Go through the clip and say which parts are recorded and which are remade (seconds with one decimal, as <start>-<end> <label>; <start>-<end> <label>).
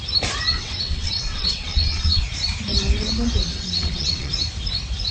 0.0-0.5 recorded; 0.5-2.2 remade; 2.2-3.5 recorded; 3.5-4.3 remade; 4.3-5.1 recorded